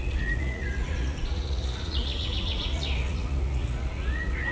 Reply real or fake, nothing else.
fake